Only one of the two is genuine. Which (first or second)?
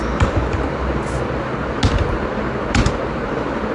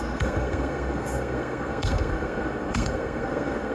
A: first